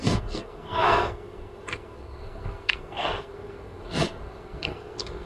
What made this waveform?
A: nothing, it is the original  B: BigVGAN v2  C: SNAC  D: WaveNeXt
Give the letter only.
C